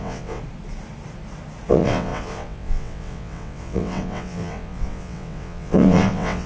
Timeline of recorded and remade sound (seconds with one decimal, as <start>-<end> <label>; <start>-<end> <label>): 0.0-0.4 remade; 0.4-1.7 recorded; 1.7-6.5 remade